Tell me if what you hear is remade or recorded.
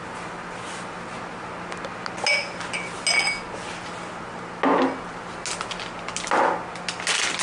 recorded